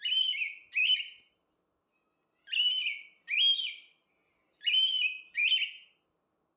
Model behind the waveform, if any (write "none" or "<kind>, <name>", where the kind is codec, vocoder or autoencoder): none